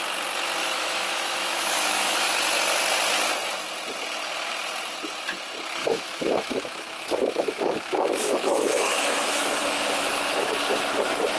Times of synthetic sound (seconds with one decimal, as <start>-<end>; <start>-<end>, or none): 0.6-2.3; 5.8-10.5